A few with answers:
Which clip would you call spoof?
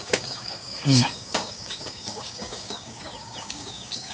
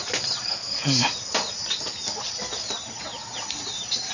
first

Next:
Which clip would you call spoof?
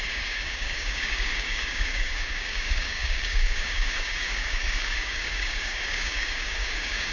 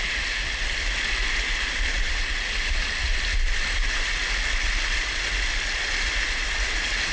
first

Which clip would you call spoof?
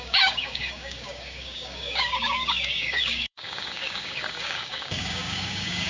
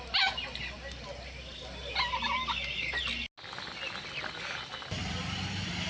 first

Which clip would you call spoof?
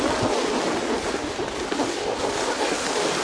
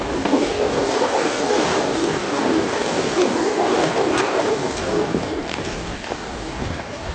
second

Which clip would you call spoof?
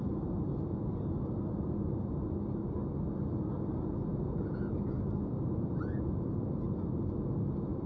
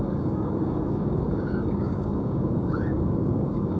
second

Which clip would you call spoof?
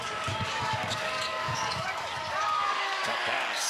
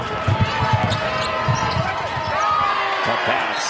first